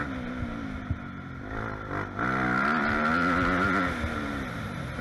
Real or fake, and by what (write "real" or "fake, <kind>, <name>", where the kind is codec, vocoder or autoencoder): real